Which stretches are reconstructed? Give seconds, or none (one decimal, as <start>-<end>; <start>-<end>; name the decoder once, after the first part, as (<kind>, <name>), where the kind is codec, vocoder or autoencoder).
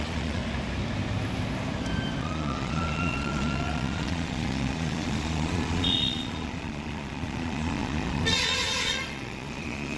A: 0.0-0.4 (vocoder, Vocos); 2.2-10.0